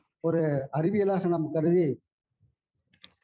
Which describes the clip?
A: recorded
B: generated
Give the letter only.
B